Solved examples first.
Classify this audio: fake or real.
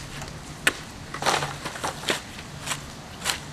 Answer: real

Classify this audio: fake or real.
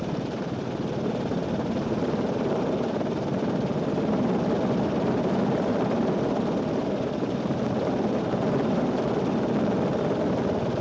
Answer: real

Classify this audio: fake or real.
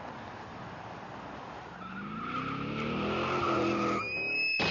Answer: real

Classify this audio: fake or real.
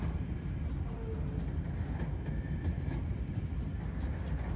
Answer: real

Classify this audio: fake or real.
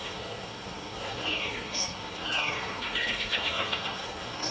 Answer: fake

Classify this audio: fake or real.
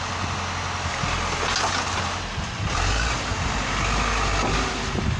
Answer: real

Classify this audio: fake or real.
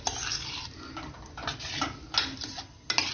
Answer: real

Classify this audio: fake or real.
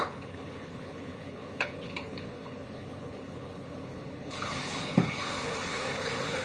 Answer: fake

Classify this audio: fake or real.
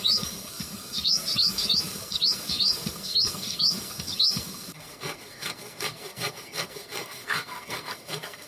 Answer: fake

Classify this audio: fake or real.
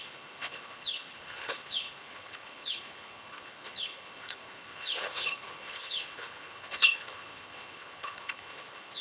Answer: fake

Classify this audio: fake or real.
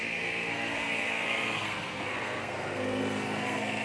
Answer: fake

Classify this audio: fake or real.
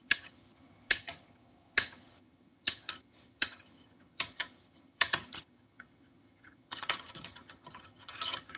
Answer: fake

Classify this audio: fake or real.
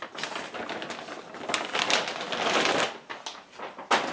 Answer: real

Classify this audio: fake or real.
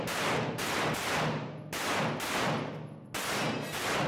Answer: real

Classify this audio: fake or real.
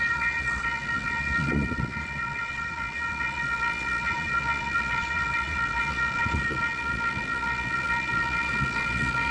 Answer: fake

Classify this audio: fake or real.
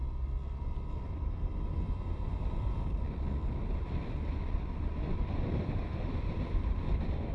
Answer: fake